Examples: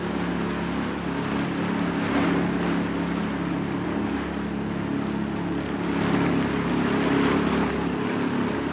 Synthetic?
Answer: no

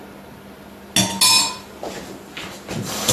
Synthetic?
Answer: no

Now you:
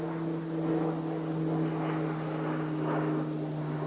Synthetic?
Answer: no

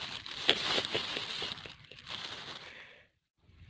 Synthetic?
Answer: yes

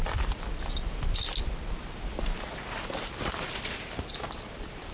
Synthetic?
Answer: no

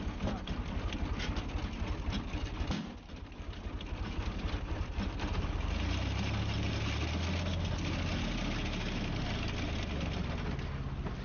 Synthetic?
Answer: no